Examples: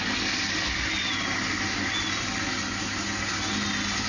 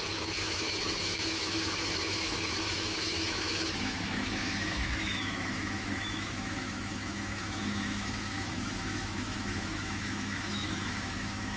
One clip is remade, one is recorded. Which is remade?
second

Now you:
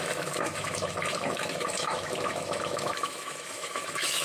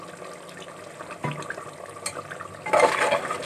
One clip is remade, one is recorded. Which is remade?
first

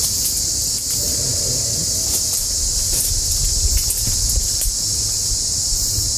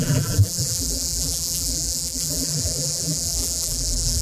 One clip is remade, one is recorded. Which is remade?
second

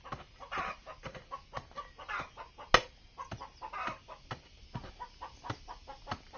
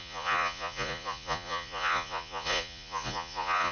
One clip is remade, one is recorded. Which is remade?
second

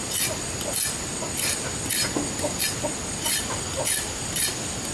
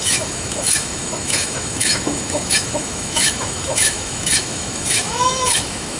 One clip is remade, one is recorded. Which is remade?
second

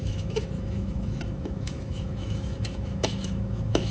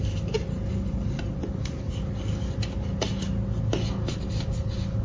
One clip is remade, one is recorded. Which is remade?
first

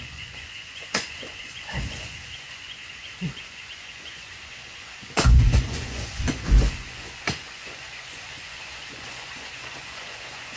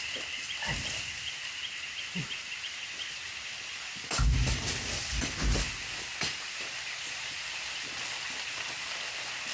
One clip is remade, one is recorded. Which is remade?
first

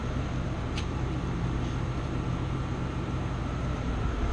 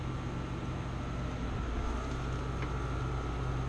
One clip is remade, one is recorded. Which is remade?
first